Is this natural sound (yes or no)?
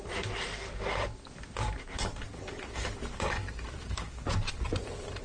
no